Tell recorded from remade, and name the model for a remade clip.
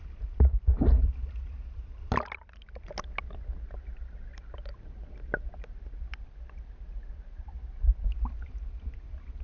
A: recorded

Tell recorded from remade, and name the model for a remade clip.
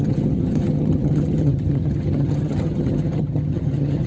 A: remade, vocoder, HiFi-GAN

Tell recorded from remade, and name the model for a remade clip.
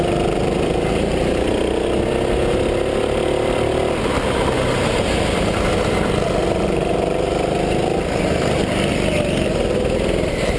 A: recorded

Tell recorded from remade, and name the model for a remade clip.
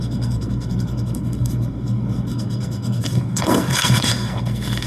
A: remade, codec, SNAC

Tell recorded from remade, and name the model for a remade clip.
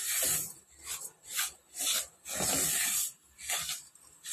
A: recorded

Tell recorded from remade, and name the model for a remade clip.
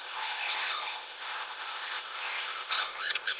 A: remade, codec, ZipCodec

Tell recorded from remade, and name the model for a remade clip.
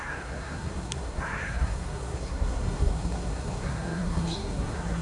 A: remade, codec, SNAC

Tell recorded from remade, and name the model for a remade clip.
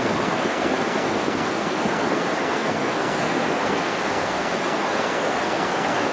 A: remade, codec, SNAC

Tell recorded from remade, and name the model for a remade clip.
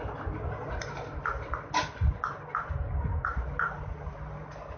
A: recorded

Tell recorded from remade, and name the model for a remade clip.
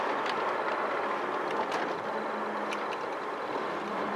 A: recorded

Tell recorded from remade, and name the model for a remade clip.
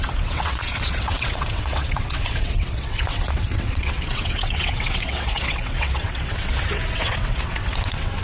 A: remade, vocoder, WaveNeXt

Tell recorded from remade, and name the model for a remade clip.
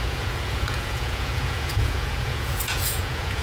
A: remade, vocoder, Vocos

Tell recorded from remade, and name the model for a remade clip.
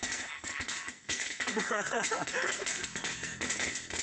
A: remade, codec, SNAC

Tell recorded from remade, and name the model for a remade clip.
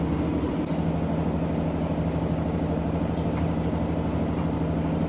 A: recorded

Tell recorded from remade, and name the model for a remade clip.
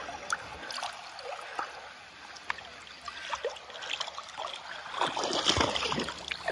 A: recorded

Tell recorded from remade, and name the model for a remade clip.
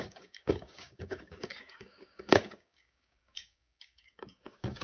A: remade, codec, DAC